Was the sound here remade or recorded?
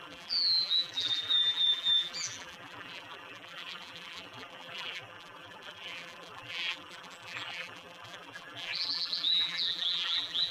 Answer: remade